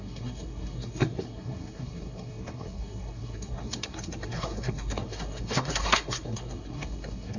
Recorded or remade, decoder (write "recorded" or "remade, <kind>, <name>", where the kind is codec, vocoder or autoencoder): remade, codec, SNAC